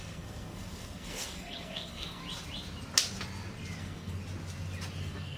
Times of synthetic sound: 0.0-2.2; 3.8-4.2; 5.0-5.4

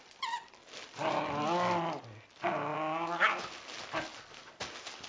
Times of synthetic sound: none

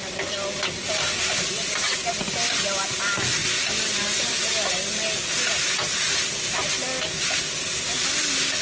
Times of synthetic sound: none

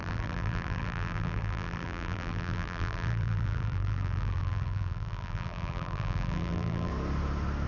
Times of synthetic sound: 0.0-6.9